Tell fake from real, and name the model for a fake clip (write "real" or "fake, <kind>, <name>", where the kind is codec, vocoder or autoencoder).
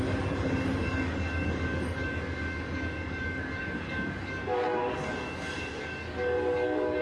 fake, codec, DAC